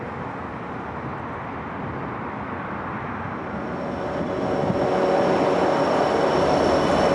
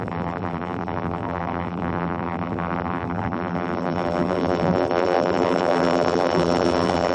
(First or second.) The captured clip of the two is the first